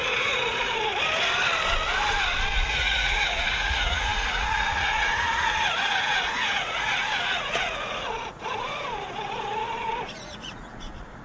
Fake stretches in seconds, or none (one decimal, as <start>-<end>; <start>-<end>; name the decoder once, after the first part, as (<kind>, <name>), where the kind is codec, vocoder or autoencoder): 0.0-0.9 (vocoder, Vocos); 2.7-11.2